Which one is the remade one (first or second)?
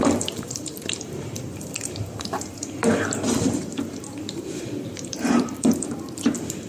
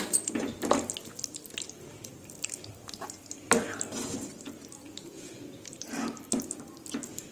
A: first